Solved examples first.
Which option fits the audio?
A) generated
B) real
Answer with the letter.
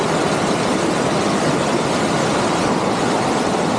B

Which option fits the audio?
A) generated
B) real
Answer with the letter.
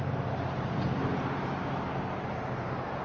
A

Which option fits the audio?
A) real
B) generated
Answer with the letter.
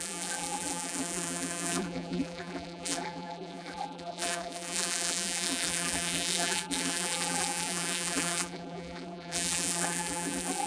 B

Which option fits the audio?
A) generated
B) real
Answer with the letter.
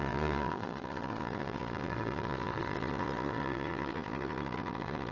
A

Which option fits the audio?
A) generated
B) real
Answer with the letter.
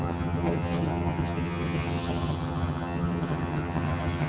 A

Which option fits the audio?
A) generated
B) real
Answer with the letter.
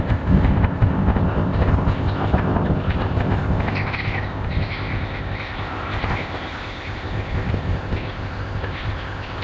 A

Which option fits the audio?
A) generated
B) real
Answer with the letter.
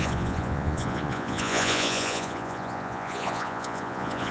A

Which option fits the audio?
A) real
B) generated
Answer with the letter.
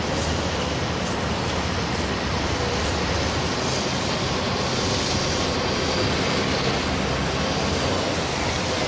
A